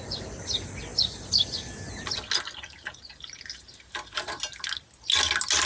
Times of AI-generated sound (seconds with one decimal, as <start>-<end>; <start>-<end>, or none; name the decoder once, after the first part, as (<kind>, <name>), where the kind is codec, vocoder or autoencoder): none